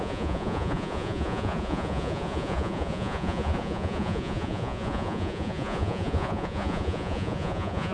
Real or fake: fake